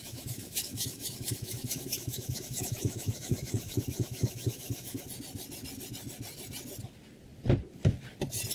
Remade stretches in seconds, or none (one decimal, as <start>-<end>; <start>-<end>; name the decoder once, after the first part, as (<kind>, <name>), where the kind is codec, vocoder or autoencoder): 0.0-5.0 (autoencoder, DAC-VAE)